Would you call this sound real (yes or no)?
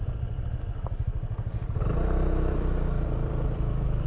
no